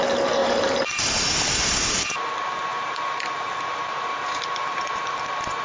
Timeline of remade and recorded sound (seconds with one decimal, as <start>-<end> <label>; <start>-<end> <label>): 0.0-0.4 recorded; 0.4-2.1 remade; 2.1-2.7 recorded; 2.7-5.6 remade